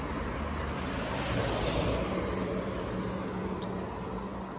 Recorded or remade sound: recorded